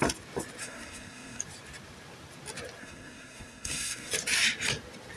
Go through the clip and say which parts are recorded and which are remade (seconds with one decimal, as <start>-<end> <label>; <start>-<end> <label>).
0.0-0.6 recorded; 0.6-1.4 remade; 1.4-2.8 recorded; 2.8-4.1 remade; 4.1-5.2 recorded